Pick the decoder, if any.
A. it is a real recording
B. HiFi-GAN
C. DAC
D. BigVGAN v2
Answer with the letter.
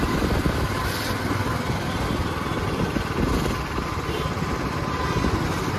A